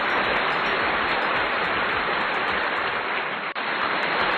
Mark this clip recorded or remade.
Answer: remade